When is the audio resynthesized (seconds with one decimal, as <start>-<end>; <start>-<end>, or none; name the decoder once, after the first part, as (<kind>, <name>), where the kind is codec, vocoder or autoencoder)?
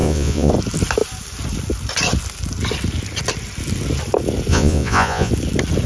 0.0-0.5 (vocoder, Vocos); 4.5-5.3